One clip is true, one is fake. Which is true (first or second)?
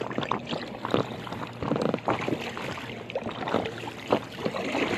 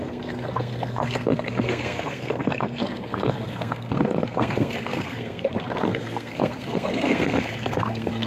first